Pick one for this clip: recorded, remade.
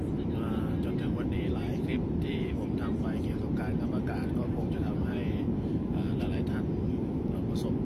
remade